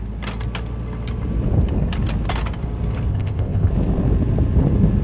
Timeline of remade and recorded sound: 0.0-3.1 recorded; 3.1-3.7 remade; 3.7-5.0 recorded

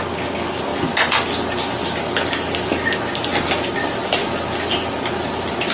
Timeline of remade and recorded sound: 0.0-5.7 recorded

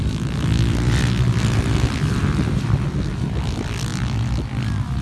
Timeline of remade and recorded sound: 0.0-5.0 recorded